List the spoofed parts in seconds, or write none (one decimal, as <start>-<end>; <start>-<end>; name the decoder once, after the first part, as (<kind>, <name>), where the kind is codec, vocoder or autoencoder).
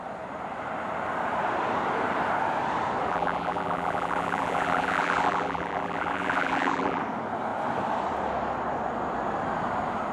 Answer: 3.1-7.0 (vocoder, BigVGAN v2)